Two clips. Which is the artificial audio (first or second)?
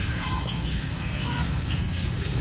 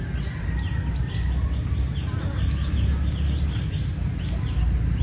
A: first